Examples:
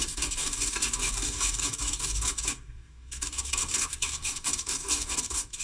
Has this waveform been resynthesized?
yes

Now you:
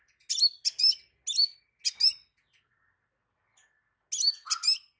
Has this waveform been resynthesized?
no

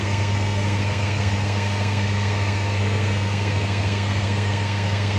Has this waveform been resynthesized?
yes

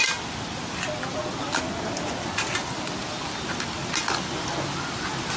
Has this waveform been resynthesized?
no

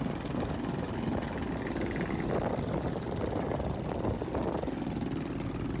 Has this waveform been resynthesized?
no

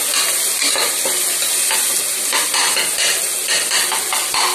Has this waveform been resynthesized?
no